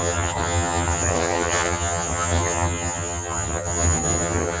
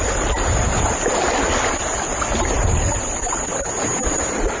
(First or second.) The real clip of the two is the second